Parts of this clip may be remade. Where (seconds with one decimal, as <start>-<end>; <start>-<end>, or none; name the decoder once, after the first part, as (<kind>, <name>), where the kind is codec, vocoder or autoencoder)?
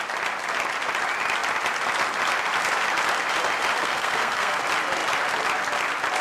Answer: 3.8-4.6 (codec, SNAC)